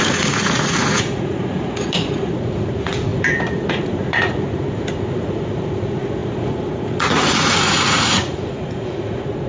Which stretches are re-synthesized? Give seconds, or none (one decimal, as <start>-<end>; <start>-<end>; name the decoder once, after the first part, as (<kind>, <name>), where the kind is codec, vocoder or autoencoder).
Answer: 0.0-9.5 (vocoder, Vocos)